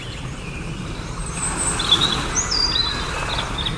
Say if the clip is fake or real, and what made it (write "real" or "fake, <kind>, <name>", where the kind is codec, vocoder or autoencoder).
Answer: real